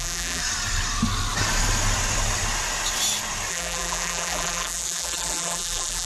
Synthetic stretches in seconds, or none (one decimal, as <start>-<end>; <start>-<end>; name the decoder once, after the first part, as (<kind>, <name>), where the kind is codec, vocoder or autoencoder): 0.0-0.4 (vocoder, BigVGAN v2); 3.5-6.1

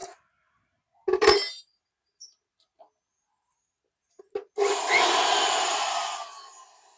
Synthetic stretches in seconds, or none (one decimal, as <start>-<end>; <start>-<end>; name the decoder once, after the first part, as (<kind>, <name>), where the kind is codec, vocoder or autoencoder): none

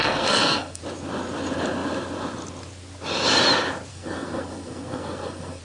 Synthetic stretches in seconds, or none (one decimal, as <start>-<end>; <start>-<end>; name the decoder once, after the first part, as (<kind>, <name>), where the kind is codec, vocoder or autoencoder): 0.0-0.8 (codec, SNAC); 3.9-5.6

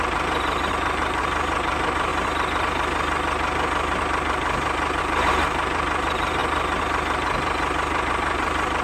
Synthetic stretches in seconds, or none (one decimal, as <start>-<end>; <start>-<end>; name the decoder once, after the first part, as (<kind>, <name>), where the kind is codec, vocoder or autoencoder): 0.0-2.1 (vocoder, BigVGAN v2); 5.0-6.4; 8.1-8.8

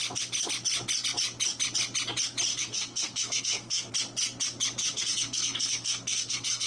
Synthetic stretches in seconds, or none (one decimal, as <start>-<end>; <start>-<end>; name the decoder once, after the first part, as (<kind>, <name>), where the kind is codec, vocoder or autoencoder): 2.5-3.9 (codec, SNAC); 4.8-6.7

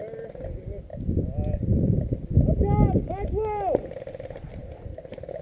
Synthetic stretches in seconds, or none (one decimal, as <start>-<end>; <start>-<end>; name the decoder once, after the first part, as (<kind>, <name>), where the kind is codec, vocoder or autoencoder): none

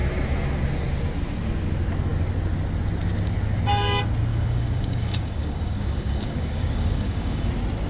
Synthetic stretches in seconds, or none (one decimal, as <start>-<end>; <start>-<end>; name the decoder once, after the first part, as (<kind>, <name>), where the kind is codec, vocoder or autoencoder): 4.3-7.5 (codec, DAC)